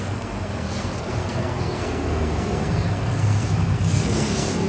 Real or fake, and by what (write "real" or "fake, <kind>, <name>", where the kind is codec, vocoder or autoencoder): fake, codec, SNAC